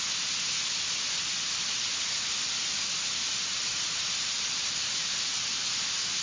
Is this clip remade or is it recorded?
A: recorded